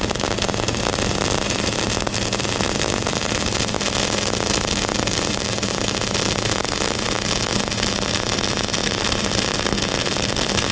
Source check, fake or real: real